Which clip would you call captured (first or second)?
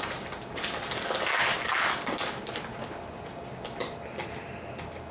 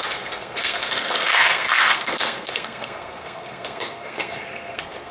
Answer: first